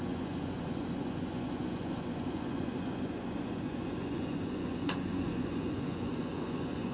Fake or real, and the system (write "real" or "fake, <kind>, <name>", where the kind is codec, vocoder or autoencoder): fake, vocoder, Vocos